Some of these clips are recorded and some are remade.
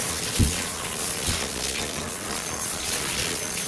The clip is remade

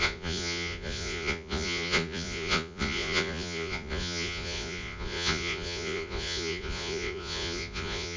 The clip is remade